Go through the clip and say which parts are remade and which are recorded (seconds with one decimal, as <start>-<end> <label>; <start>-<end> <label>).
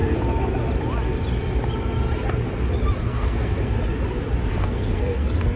0.0-3.0 recorded; 3.0-3.8 remade; 3.8-4.6 recorded; 4.6-5.6 remade